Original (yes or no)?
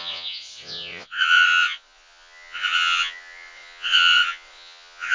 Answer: no